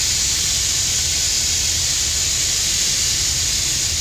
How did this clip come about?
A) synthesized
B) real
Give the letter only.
B